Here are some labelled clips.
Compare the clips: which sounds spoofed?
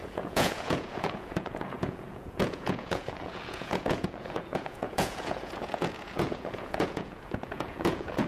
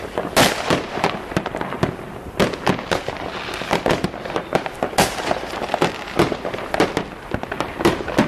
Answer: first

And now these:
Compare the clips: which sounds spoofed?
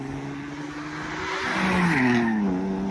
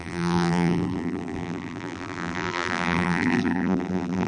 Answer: second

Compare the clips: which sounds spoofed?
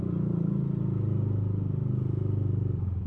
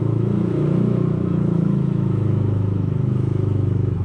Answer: second